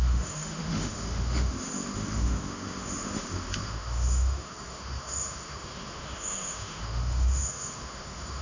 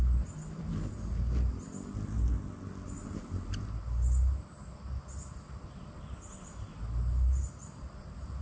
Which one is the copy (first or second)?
first